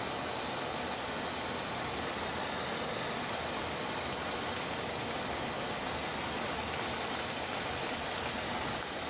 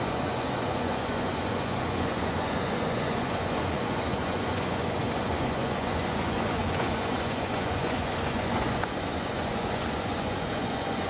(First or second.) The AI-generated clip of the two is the second